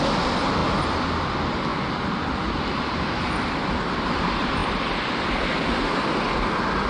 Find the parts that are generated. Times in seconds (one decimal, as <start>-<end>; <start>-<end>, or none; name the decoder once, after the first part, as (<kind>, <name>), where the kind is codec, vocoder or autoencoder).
4.6-5.1 (vocoder, BigVGAN v2)